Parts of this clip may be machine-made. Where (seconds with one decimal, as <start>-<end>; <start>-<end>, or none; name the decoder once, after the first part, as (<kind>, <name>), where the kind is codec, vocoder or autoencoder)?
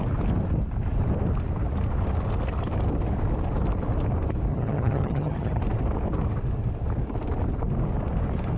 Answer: 4.5-5.6 (vocoder, HiFi-GAN)